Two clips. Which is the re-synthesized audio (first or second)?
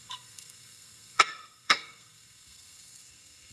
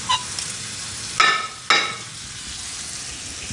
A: first